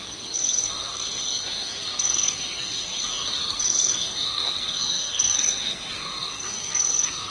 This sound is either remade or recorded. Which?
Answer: remade